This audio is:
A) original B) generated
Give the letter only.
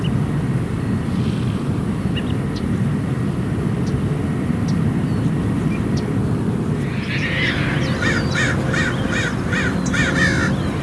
A